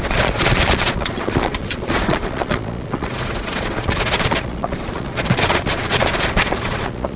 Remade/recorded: remade